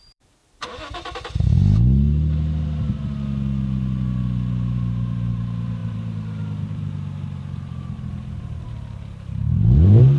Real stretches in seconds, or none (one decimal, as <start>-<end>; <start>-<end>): 0.4-4.5